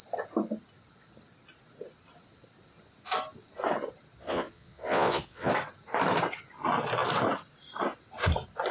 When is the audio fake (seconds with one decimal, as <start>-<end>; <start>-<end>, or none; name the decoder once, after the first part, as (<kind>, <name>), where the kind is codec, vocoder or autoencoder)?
4.2-5.5 (vocoder, Vocos)